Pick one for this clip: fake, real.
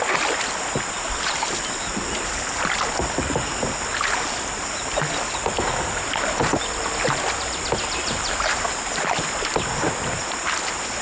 real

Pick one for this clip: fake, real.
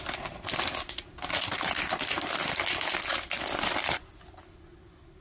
real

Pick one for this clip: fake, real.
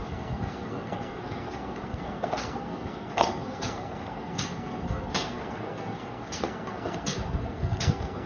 fake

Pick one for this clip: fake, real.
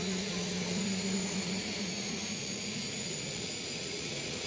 fake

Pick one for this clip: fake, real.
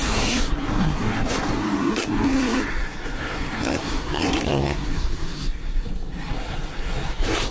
fake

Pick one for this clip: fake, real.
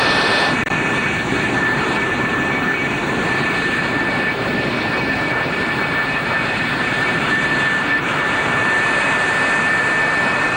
fake